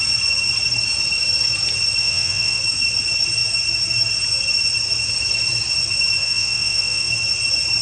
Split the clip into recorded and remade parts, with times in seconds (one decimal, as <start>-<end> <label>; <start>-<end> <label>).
0.0-2.0 recorded; 2.0-2.6 remade; 2.6-6.2 recorded; 6.2-7.1 remade; 7.1-7.8 recorded